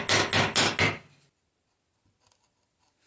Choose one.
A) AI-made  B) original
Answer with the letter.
B